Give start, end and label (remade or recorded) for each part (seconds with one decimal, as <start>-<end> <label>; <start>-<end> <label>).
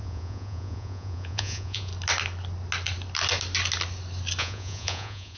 0.0-1.9 remade; 1.9-4.4 recorded; 4.4-5.4 remade